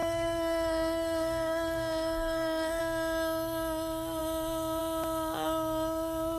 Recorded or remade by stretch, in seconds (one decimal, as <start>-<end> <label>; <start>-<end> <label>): 0.0-2.8 remade; 2.8-6.4 recorded